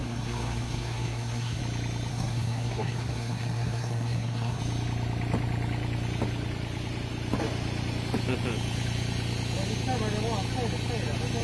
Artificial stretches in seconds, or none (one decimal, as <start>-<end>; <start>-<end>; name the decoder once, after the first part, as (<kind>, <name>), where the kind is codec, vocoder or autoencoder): 0.0-1.6 (codec, SNAC); 2.1-4.6